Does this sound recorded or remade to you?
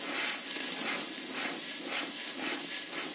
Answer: recorded